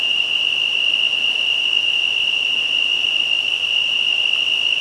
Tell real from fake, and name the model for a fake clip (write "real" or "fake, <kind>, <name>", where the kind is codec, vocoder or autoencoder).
real